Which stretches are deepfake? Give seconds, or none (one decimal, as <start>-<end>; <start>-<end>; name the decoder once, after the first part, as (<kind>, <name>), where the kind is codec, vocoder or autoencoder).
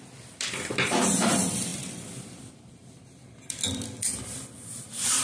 0.0-5.2 (vocoder, BigVGAN v2)